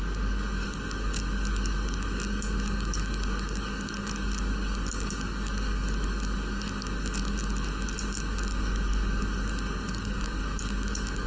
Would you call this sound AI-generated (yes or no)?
yes